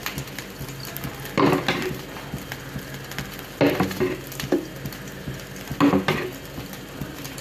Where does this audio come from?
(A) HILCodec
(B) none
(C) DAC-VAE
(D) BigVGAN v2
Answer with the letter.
B